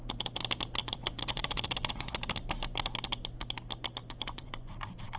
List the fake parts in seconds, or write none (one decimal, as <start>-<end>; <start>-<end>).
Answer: 0.8-2.2; 4.0-4.7